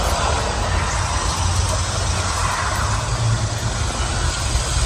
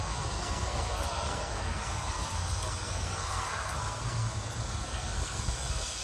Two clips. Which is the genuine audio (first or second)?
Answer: first